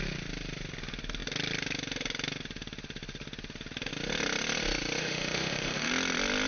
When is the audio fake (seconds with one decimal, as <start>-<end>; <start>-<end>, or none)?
5.0-5.9